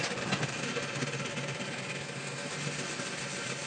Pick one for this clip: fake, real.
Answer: real